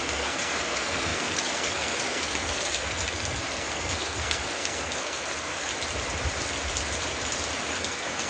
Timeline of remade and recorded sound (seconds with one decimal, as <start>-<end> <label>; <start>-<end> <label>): 0.0-5.7 remade; 5.7-7.6 recorded; 7.6-8.3 remade